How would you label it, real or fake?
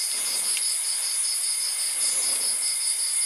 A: real